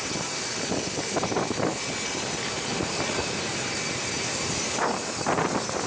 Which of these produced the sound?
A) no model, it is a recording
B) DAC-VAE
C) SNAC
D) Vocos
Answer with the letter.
A